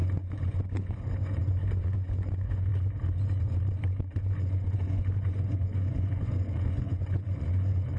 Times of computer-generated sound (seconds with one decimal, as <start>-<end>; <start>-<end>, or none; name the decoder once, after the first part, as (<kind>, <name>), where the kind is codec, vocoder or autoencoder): 0.0-2.7 (vocoder, Vocos); 4.3-8.0

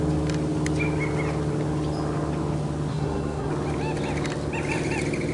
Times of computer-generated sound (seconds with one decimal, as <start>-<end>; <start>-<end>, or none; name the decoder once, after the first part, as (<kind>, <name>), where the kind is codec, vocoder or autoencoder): 2.9-3.5 (codec, SNAC)

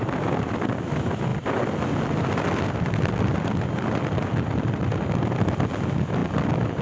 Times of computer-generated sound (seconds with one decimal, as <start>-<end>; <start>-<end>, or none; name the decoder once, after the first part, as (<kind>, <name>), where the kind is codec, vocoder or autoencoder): none

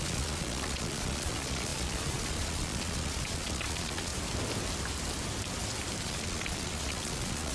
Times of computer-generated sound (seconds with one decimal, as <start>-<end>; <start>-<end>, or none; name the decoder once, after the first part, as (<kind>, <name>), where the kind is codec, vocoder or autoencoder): 0.0-4.1 (vocoder, Vocos); 6.0-7.5